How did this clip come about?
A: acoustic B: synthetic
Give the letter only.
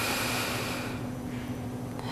A